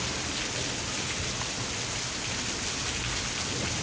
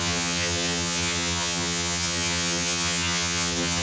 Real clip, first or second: first